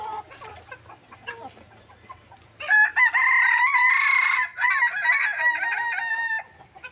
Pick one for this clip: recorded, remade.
recorded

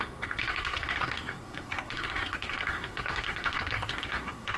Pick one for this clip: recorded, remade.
remade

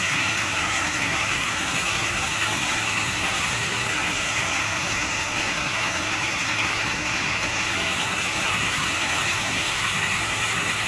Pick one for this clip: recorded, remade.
remade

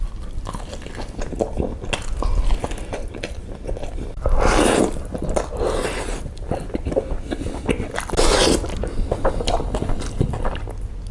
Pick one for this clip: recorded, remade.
recorded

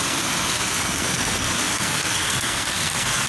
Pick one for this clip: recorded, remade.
remade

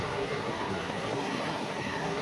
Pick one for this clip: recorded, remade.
remade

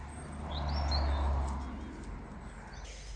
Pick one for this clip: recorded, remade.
recorded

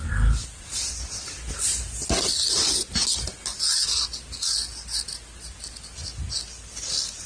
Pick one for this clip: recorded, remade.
recorded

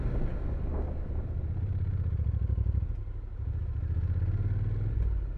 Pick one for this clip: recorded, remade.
recorded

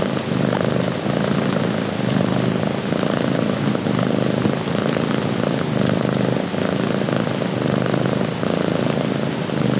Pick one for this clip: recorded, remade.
recorded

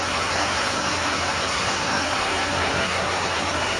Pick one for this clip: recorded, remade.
remade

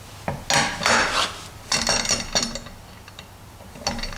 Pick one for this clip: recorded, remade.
recorded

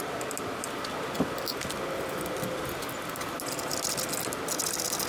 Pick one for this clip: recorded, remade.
recorded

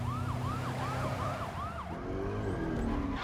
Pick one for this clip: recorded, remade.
recorded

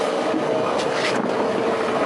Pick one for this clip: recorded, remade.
recorded